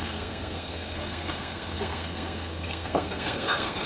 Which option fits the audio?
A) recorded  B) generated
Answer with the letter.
B